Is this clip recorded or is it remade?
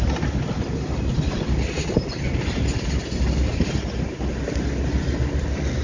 recorded